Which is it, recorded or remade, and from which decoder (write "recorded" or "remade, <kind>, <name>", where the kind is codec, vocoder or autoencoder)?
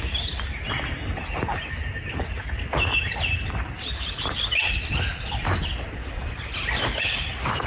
recorded